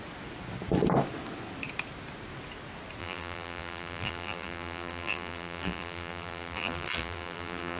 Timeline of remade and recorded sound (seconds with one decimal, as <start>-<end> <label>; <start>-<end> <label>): 0.0-3.0 recorded; 3.0-7.8 remade